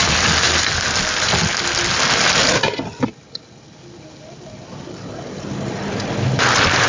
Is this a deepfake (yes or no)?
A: no